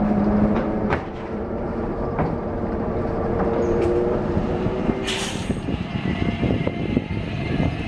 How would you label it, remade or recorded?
remade